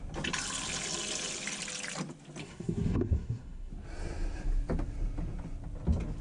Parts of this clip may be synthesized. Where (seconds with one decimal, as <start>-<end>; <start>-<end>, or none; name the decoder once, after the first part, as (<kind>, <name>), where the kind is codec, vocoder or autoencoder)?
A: 2.4-3.7 (codec, SNAC)